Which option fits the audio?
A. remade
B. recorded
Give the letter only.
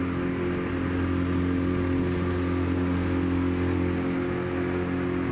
B